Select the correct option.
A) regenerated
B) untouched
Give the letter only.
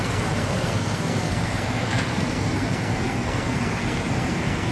A